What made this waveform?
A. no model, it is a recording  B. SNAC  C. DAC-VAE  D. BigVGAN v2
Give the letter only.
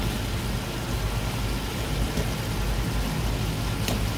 A